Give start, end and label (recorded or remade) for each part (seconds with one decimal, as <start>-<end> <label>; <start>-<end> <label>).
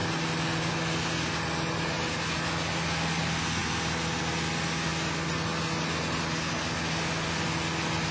0.0-8.1 recorded